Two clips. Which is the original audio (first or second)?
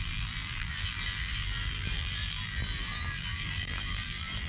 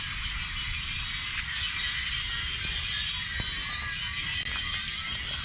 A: second